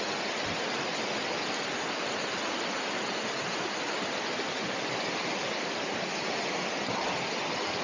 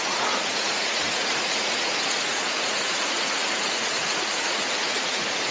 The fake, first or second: second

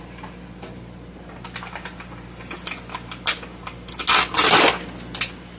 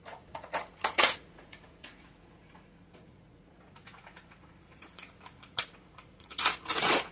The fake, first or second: second